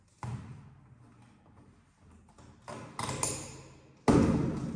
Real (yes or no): yes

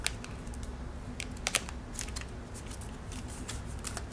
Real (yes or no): yes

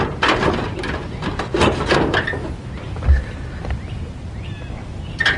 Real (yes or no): yes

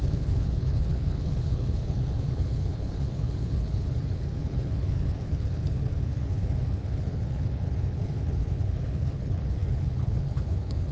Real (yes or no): no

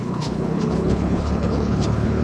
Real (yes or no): no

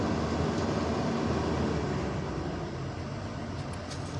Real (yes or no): yes